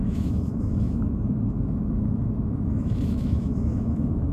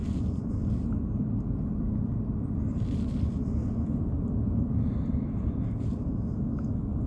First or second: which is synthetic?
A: first